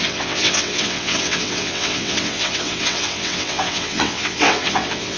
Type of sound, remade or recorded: remade